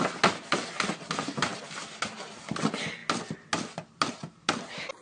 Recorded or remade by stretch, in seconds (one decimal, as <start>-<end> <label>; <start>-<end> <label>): 0.0-5.0 recorded